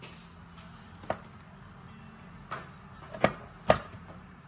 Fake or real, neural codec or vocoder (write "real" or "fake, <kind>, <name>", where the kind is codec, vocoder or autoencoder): real